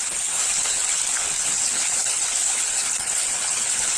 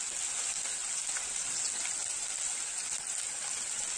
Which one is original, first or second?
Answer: second